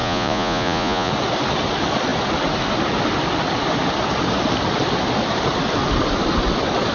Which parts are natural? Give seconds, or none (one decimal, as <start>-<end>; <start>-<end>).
1.1-6.9